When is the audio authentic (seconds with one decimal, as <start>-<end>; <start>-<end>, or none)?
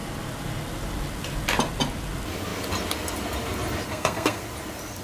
0.0-3.9; 4.4-5.0